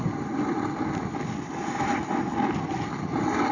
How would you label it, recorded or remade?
recorded